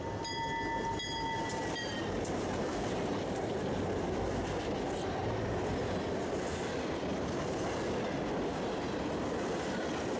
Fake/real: real